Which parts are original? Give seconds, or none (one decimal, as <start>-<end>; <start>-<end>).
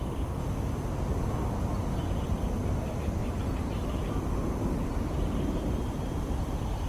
0.0-3.2; 4.1-4.6; 6.4-6.9